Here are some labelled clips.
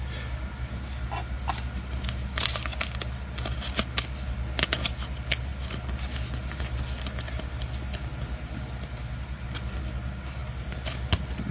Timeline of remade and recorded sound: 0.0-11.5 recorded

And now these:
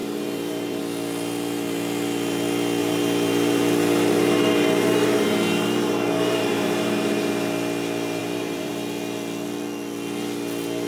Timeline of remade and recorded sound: 0.0-0.8 remade; 0.8-2.8 recorded; 2.8-7.3 remade; 7.3-8.2 recorded; 8.2-8.7 remade; 8.7-10.9 recorded

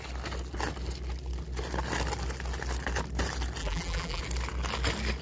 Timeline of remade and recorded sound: 0.0-3.6 recorded; 3.6-4.2 remade; 4.2-5.2 recorded

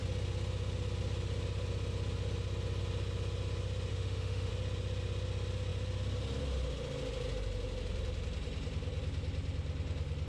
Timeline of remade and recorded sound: 0.0-3.9 recorded; 3.9-4.5 remade; 4.5-10.3 recorded

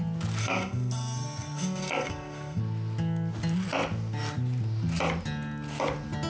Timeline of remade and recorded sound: 0.0-0.4 recorded; 0.4-2.6 remade; 2.6-6.3 recorded